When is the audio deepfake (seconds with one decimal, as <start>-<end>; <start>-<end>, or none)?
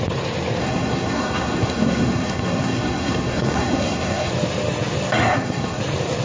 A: 0.6-4.3; 5.2-5.8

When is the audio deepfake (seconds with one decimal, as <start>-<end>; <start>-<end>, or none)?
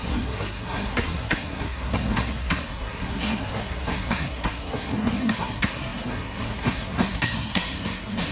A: 0.0-8.3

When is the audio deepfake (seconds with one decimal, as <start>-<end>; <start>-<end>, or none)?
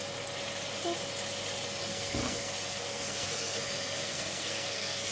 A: 1.9-5.1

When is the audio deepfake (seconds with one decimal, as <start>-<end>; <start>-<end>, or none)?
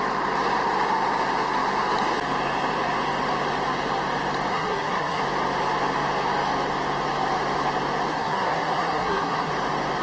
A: 4.5-5.2; 8.1-9.5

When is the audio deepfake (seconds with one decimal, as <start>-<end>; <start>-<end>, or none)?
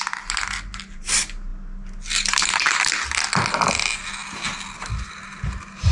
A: none